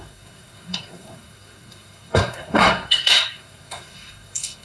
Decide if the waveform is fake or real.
fake